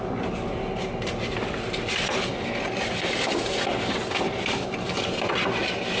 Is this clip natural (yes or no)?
yes